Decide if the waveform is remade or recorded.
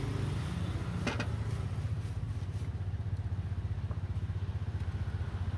recorded